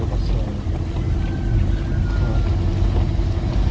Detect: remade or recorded recorded